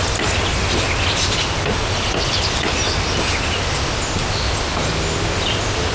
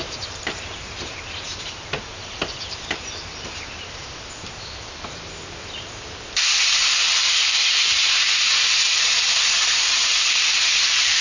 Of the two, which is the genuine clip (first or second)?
first